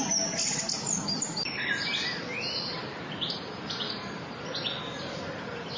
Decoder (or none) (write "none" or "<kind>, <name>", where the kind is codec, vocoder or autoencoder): none